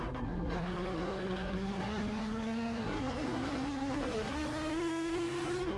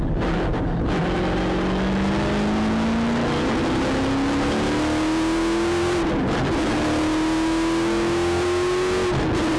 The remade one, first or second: first